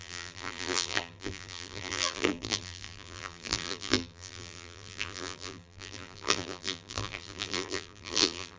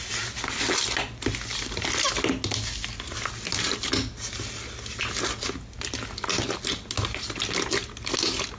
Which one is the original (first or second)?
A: second